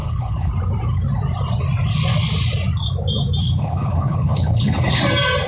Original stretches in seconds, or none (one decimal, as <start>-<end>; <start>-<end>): 0.5-3.4; 5.0-5.5